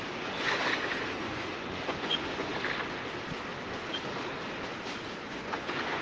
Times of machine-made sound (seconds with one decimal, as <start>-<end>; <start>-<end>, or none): 0.0-0.6; 1.2-2.5; 5.2-6.0

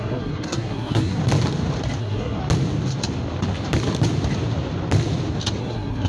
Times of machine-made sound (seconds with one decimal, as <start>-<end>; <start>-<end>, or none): 0.0-1.2; 2.0-2.4; 5.6-6.1

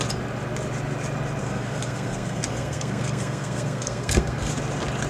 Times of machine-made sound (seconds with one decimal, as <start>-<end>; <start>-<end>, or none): 1.4-4.5